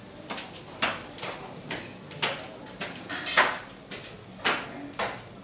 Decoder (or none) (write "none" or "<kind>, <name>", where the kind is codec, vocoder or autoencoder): none